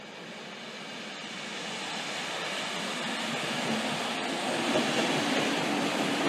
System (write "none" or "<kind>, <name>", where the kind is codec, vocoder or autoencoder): none